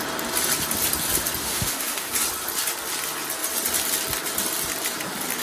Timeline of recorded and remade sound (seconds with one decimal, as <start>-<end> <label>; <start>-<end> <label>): 0.0-1.4 recorded; 1.4-2.1 remade; 2.1-5.4 recorded